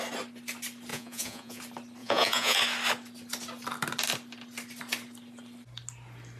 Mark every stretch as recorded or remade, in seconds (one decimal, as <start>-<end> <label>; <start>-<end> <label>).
0.0-0.9 recorded; 0.9-1.6 remade; 1.6-2.0 recorded; 2.0-2.6 remade; 2.6-6.4 recorded